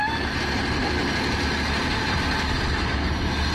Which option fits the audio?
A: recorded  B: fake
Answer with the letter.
A